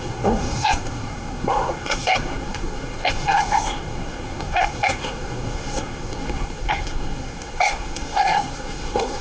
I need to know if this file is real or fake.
fake